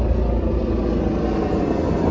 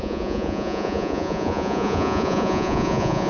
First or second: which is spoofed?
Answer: second